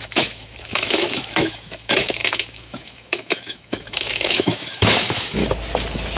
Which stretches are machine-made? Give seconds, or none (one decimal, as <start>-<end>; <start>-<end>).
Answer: 0.0-5.4